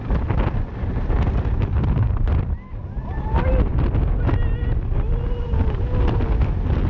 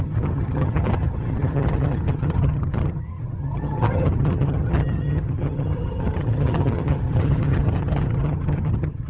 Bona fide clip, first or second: first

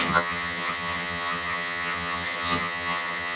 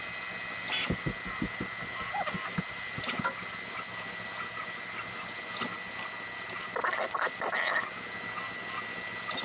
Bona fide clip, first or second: second